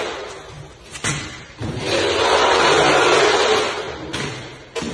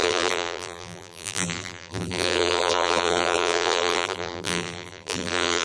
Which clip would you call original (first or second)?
first